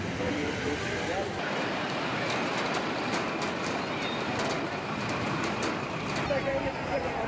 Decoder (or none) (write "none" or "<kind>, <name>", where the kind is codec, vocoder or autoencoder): vocoder, BigVGAN v2